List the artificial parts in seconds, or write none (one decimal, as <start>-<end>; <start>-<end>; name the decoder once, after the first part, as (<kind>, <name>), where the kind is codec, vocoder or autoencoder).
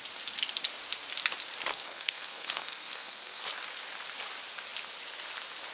1.7-3.4 (codec, SNAC)